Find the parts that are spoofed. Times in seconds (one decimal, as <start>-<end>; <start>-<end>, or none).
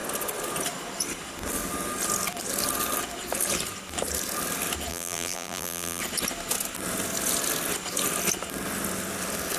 4.9-6.0